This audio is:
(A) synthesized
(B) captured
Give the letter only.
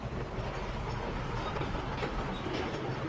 B